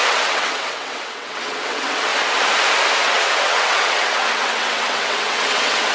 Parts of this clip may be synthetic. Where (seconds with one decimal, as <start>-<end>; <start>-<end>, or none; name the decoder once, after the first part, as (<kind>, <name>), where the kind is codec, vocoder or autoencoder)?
0.0-2.1 (vocoder, WaveNeXt); 3.0-5.9